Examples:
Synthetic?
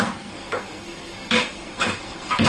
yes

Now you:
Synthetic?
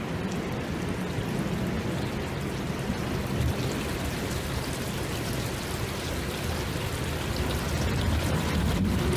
no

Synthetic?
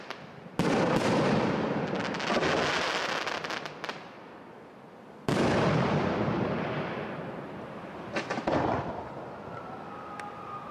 no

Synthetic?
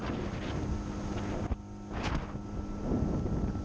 no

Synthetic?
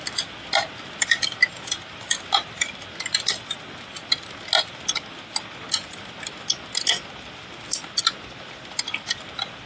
no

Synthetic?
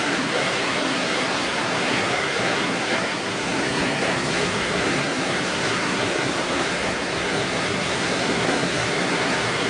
yes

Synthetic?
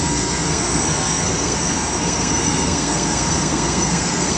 yes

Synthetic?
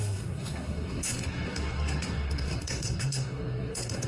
yes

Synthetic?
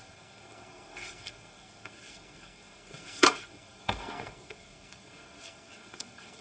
yes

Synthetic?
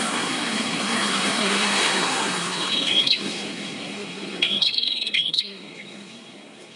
yes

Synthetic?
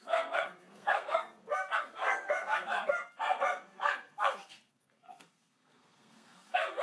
yes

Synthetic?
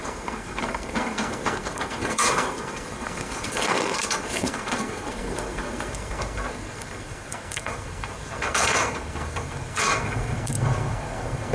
yes